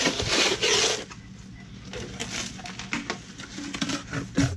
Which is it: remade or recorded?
recorded